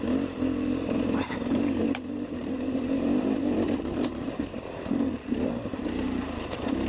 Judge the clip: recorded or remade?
remade